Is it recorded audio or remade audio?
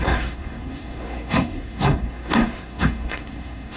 remade